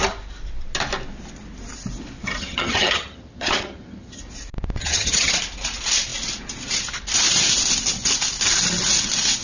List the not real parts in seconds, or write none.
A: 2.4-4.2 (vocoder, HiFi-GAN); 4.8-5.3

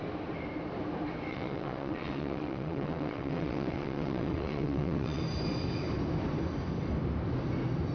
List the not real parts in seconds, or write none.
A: 1.3-5.2 (vocoder, WaveNeXt)

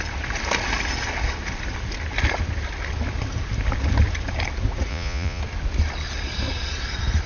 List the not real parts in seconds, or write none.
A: 4.9-5.4 (vocoder, Vocos)